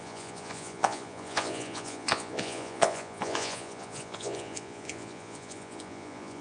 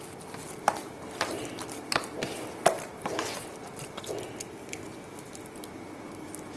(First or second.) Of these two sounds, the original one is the second